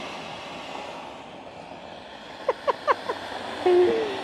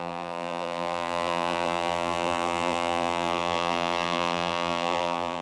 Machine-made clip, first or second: second